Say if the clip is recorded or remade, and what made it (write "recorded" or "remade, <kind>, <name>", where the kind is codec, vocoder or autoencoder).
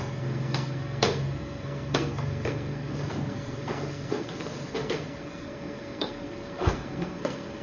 remade, codec, SNAC